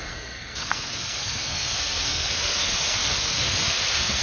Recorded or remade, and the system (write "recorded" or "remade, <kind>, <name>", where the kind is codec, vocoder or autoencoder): remade, codec, SNAC